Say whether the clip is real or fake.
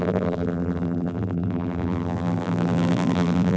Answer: fake